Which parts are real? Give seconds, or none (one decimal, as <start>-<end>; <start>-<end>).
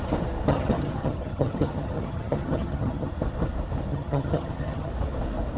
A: 0.0-0.5; 3.1-3.9; 4.9-5.6